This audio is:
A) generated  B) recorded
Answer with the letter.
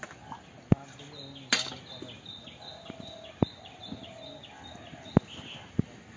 B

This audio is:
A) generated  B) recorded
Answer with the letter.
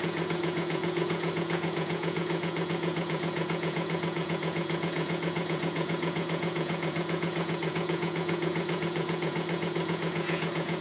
A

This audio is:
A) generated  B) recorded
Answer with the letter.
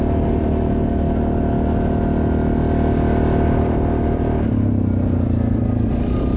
B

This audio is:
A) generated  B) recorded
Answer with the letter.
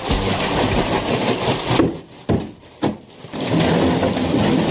B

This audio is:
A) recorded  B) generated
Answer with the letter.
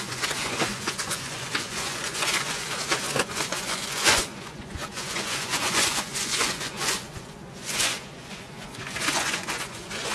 B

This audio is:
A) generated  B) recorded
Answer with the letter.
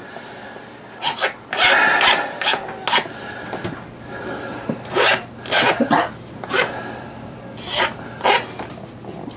B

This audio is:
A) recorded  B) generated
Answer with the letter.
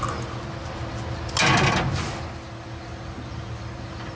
A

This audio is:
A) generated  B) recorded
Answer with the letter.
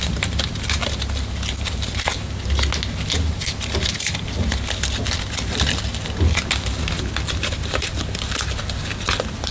B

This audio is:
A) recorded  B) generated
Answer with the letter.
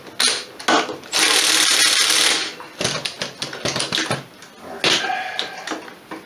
A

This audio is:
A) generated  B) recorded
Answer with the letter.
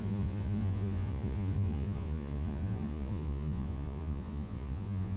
A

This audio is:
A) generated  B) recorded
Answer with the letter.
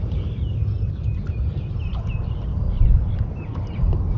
B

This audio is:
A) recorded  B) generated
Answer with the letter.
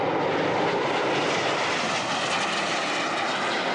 A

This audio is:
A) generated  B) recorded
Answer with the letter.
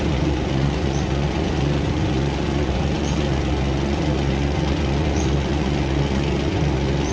A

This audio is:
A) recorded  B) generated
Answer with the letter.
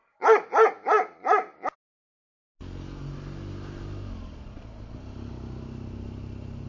A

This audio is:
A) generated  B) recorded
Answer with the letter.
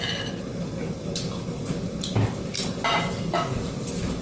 B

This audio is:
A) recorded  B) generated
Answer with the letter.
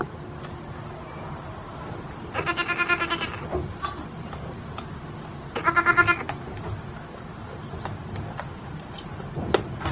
A